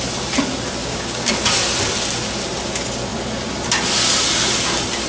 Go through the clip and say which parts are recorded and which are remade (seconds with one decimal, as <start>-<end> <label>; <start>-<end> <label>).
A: 0.0-0.8 recorded; 0.8-1.3 remade; 1.3-5.1 recorded